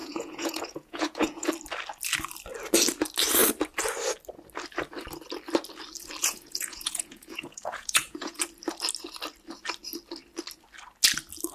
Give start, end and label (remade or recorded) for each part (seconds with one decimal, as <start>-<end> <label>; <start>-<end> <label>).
0.0-1.5 remade; 1.5-6.2 recorded; 6.2-8.4 remade; 8.4-11.5 recorded